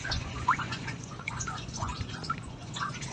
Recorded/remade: remade